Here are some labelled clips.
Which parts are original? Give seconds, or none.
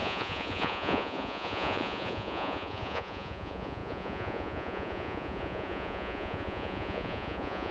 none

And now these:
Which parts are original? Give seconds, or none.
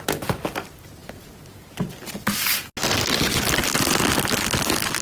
0.0-5.0